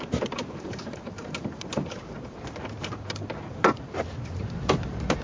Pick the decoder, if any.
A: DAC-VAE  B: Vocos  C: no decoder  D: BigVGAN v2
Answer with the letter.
D